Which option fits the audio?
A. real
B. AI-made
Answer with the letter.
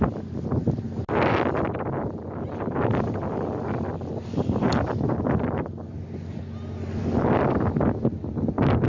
A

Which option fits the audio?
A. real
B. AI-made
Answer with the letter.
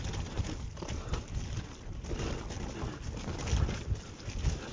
A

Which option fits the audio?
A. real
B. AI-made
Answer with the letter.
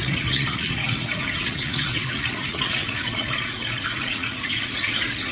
B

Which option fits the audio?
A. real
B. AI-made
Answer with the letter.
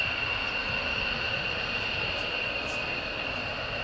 A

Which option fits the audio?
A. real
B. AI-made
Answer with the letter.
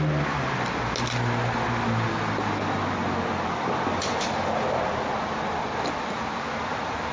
A